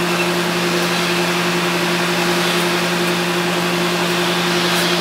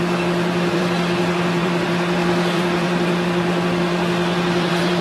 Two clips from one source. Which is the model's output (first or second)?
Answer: second